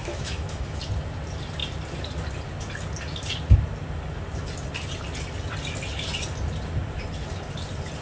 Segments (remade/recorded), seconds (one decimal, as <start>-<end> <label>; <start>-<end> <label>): 0.0-0.8 remade; 0.8-8.0 recorded